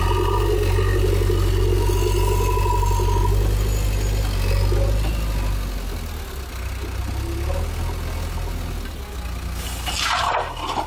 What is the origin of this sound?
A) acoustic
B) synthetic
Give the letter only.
A